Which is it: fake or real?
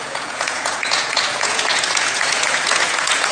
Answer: fake